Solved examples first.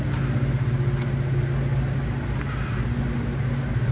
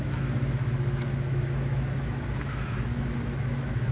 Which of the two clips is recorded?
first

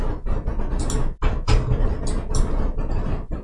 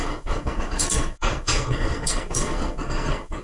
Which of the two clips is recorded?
first